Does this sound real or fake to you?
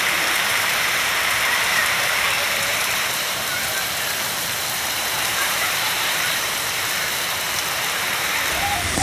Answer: fake